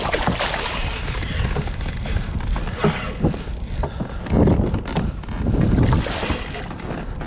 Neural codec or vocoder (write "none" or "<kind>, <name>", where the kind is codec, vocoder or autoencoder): none